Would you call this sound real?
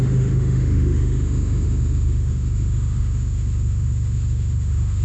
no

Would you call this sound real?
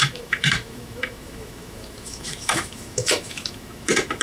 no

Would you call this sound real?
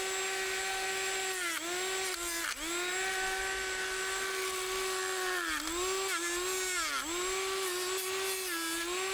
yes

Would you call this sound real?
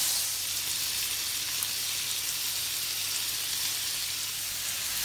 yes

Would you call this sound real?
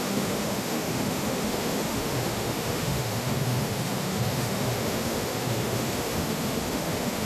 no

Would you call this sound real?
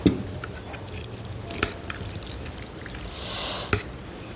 yes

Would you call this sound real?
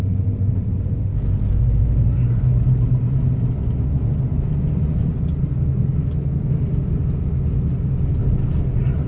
yes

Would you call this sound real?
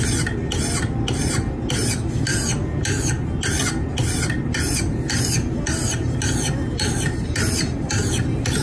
yes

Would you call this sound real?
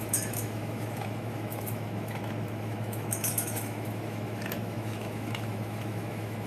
no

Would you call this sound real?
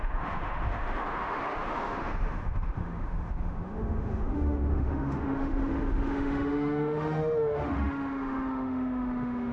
no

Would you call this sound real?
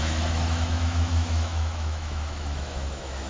no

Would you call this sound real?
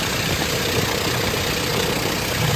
yes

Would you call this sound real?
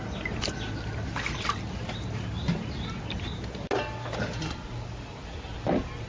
yes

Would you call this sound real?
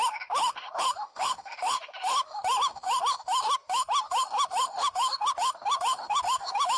no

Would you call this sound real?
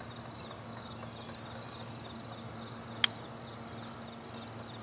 yes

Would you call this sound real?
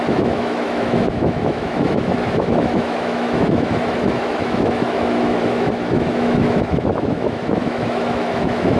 no